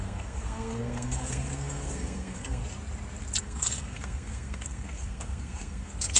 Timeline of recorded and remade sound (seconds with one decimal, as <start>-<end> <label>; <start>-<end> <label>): 0.0-2.6 remade; 2.6-3.4 recorded; 3.4-6.2 remade